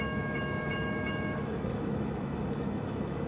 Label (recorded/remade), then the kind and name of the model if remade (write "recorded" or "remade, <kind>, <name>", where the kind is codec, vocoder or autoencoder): remade, autoencoder, DAC-VAE